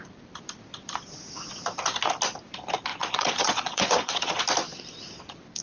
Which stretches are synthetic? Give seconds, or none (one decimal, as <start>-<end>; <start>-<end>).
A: 2.9-4.4